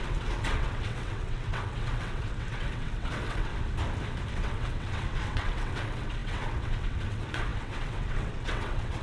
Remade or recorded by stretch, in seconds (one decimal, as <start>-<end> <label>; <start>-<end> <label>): 0.0-3.5 remade; 3.5-4.3 recorded; 4.3-9.0 remade